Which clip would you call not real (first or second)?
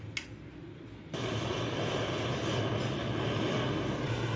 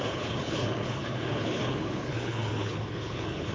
second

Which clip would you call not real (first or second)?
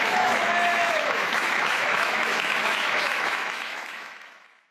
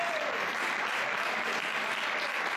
first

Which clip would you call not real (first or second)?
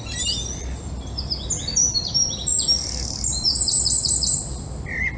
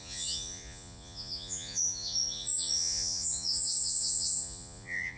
second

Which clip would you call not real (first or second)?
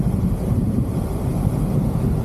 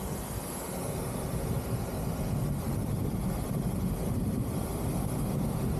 first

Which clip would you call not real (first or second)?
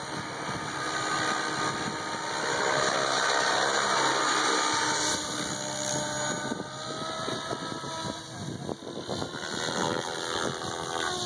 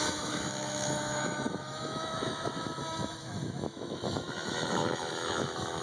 second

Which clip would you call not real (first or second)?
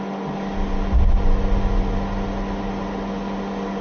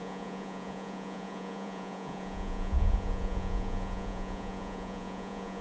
second